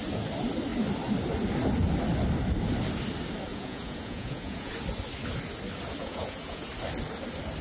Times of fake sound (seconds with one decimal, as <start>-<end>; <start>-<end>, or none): 3.5-4.7; 6.0-6.7

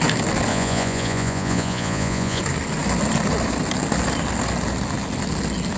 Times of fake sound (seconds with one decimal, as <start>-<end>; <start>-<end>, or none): 0.5-2.4

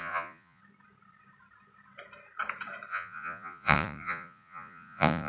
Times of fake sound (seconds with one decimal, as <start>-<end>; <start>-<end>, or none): 0.0-0.6; 2.9-5.3